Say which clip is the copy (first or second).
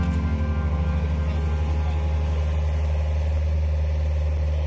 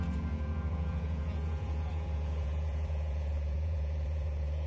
second